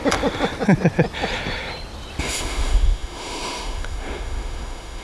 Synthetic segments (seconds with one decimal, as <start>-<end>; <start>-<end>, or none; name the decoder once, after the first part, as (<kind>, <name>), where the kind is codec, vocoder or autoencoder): 2.2-5.0 (autoencoder, DAC-VAE)